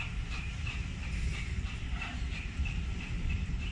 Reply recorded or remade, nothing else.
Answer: recorded